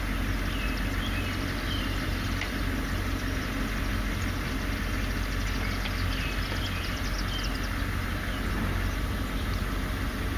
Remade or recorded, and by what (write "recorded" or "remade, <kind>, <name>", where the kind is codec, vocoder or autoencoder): recorded